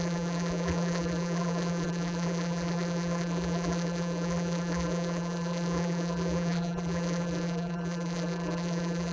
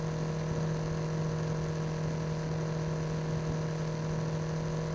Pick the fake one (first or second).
first